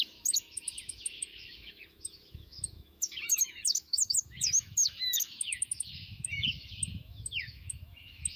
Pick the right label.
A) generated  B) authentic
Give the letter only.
A